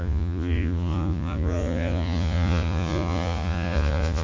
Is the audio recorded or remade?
remade